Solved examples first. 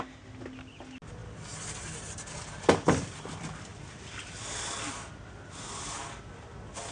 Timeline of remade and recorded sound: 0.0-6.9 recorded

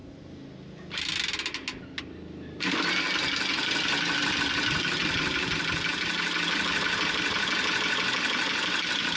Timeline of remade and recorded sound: 0.0-9.2 recorded

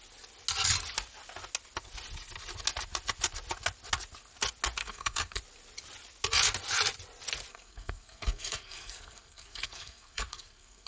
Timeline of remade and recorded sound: 0.0-4.8 recorded; 4.8-5.4 remade; 5.4-7.5 recorded; 7.5-10.9 remade

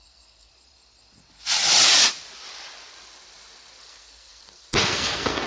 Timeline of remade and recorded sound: 0.0-0.5 remade; 0.5-3.8 recorded; 3.8-5.5 remade

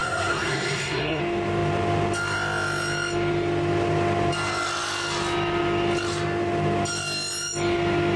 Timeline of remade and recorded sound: 0.0-1.2 remade; 1.2-8.2 recorded

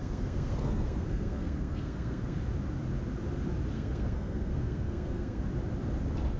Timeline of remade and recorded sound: 0.0-2.4 remade; 2.4-3.7 recorded; 3.7-5.4 remade; 5.4-6.4 recorded

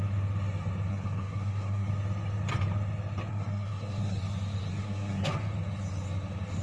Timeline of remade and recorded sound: 0.0-0.9 recorded; 0.9-1.9 remade; 1.9-3.3 recorded; 3.3-4.2 remade; 4.2-4.7 recorded; 4.7-5.3 remade; 5.3-6.6 recorded

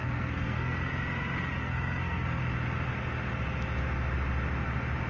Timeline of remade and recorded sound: 0.0-0.9 remade; 0.9-1.6 recorded; 1.6-2.4 remade; 2.4-5.1 recorded